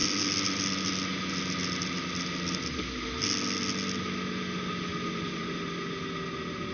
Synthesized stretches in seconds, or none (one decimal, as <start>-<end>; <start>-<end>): none